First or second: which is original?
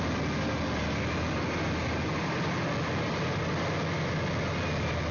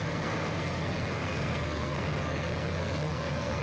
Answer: first